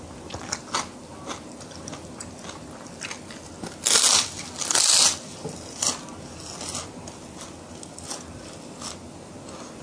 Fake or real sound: real